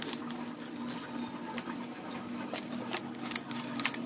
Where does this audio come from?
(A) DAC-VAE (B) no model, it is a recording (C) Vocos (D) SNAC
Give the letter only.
B